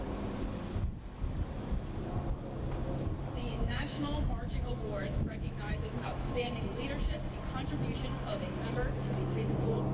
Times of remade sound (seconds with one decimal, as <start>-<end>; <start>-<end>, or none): 3.4-6.5